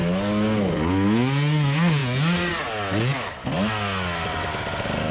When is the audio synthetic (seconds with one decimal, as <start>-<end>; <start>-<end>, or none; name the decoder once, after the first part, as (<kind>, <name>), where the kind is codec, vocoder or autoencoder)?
none